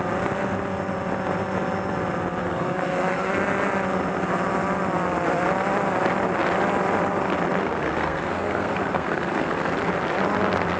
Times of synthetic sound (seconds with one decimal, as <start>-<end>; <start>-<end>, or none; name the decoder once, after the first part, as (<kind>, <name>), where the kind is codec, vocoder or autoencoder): 2.4-3.3 (codec, SNAC); 7.6-9.7